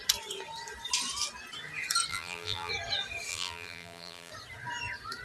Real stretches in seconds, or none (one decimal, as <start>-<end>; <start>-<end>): 0.0-2.1; 2.7-3.3; 4.3-5.2